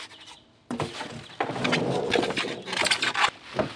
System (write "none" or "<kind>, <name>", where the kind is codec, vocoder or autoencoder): none